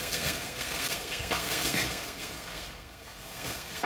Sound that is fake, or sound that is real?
fake